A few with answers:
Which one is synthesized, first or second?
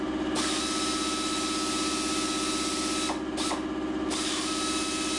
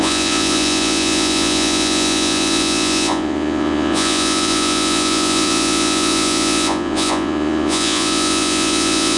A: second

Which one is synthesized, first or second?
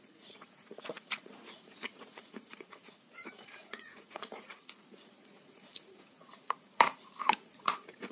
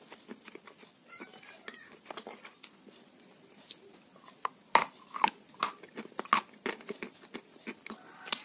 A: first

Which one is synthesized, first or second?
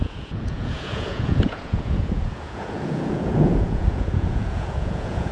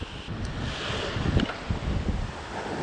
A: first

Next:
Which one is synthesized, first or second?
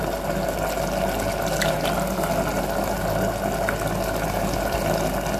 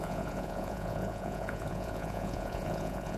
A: second